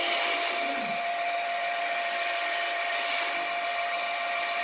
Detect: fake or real real